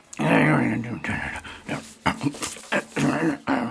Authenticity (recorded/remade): recorded